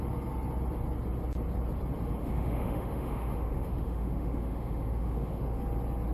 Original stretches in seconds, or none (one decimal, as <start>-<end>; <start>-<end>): 0.0-2.2; 5.6-6.1